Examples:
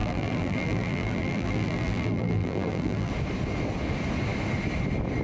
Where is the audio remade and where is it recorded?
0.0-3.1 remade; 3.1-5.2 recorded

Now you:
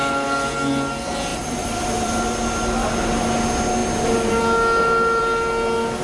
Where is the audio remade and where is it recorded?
0.0-1.3 recorded; 1.3-2.2 remade; 2.2-6.0 recorded

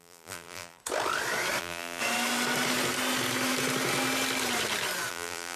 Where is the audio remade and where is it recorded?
0.0-0.8 remade; 0.8-1.6 recorded; 1.6-2.0 remade; 2.0-5.1 recorded; 5.1-5.6 remade

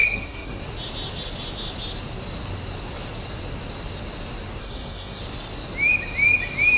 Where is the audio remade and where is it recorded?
0.0-0.6 remade; 0.6-4.6 recorded; 4.6-5.2 remade; 5.2-6.8 recorded

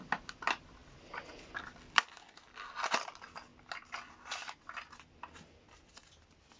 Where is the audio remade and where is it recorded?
0.0-6.6 recorded

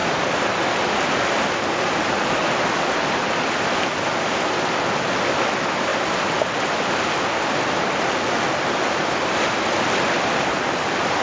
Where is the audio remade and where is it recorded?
0.0-4.5 remade; 4.5-11.2 recorded